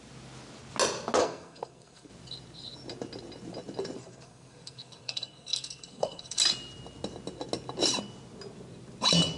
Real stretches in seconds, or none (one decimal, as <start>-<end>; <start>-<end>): 0.0-1.2; 2.1-4.0; 6.4-9.4